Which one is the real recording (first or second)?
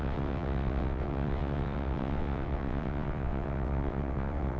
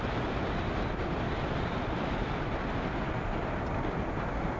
second